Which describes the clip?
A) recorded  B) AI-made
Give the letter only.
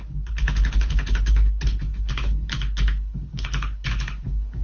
B